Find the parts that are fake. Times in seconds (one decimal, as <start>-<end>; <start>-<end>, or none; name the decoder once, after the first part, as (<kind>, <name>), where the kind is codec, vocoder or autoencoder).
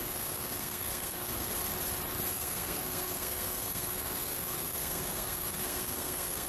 0.0-1.5 (codec, SNAC); 2.3-6.5